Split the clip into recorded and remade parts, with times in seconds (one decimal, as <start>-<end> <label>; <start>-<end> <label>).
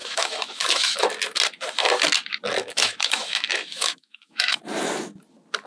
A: 0.0-1.1 remade; 1.1-2.6 recorded; 2.6-4.6 remade; 4.6-5.7 recorded